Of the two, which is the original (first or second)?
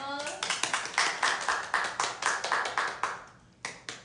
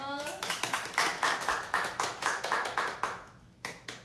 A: first